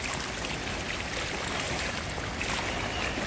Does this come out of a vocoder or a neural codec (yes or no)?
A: no